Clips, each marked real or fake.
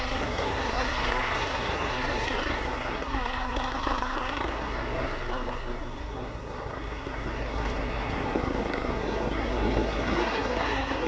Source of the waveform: fake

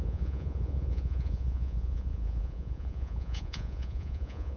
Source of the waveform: fake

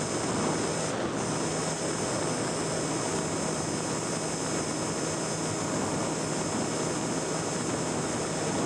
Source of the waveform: real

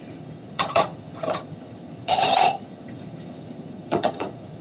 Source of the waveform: fake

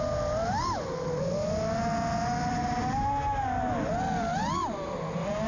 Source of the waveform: real